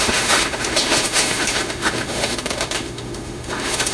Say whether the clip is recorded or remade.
remade